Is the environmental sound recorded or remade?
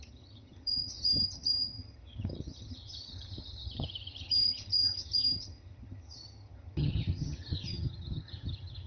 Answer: remade